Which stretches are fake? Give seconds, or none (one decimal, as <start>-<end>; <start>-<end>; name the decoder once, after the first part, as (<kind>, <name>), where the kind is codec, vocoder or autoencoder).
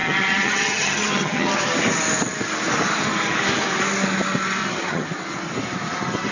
0.0-1.6 (vocoder, HiFi-GAN); 4.6-5.1